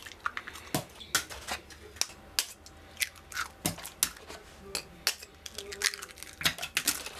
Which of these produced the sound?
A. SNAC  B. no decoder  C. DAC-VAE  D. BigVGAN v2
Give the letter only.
B